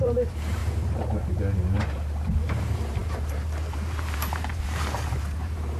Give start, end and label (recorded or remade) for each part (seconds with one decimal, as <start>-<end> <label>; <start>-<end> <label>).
0.0-0.6 remade; 0.6-1.2 recorded; 1.2-5.8 remade